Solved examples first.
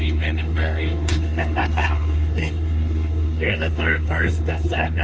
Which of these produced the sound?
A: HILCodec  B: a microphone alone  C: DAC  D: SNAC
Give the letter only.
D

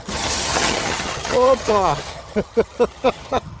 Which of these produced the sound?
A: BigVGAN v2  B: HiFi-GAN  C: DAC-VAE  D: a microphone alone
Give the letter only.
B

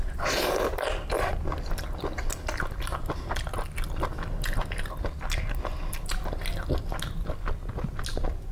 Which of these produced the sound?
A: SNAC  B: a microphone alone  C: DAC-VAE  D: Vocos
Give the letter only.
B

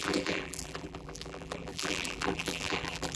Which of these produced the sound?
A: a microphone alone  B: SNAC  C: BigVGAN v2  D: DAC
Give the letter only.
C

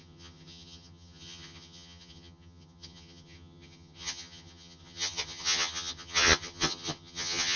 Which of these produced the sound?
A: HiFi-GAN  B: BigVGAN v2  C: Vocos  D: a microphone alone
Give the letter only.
A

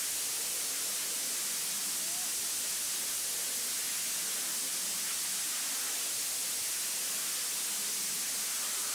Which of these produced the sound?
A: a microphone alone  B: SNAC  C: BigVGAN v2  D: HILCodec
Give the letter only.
A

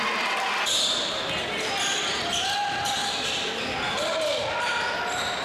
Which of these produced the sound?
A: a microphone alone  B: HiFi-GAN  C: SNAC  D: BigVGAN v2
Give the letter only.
A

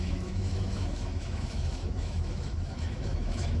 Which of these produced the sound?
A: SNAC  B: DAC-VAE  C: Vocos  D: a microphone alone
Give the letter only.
B